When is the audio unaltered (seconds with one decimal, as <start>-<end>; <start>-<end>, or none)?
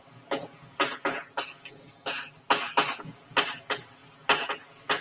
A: 0.0-5.0